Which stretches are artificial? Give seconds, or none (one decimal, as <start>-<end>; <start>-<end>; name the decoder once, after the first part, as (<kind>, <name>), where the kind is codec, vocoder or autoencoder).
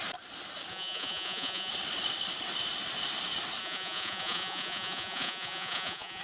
0.7-1.7 (vocoder, Vocos); 3.6-6.2